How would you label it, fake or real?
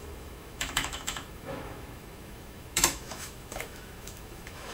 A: fake